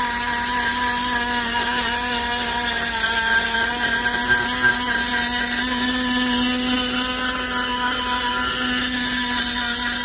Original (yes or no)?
yes